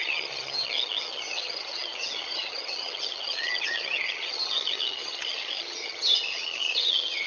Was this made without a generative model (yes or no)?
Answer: no